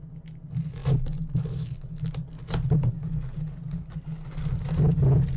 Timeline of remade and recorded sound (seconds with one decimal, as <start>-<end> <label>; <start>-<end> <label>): 0.0-5.4 recorded